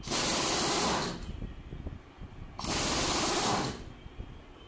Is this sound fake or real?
real